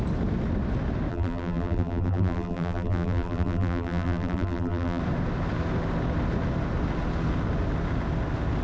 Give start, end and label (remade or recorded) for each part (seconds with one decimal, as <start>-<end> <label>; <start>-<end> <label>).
0.0-1.1 recorded; 1.1-5.0 remade; 5.0-8.6 recorded